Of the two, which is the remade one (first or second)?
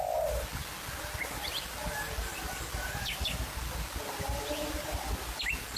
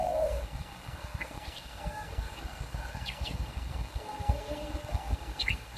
second